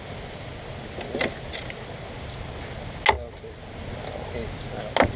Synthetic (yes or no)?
no